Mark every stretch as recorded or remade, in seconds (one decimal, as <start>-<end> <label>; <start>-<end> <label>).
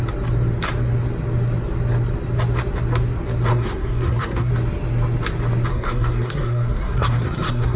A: 0.0-3.5 recorded; 3.5-4.5 remade; 4.5-5.7 recorded; 5.7-7.8 remade